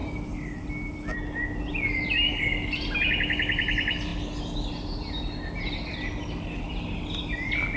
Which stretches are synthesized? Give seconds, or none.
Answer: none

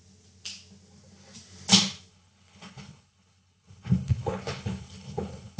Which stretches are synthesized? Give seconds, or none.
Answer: 2.1-5.6 (codec, HILCodec)

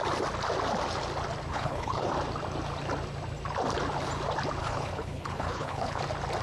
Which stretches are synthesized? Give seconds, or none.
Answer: 1.5-2.1 (codec, HILCodec); 4.6-6.0

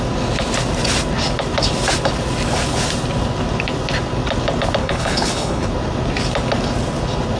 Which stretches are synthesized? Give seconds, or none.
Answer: 4.8-5.7 (codec, HILCodec)

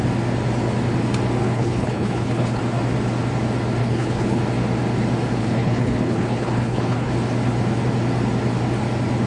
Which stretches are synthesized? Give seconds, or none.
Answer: 1.4-2.6 (codec, HILCodec); 3.8-4.4; 5.4-7.1